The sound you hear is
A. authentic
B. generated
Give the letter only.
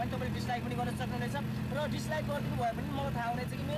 A